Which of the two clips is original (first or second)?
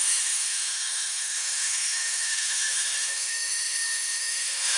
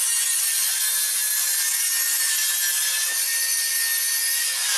second